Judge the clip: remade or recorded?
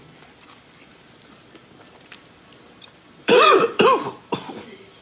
remade